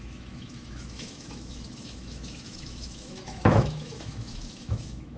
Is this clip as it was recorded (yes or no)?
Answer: no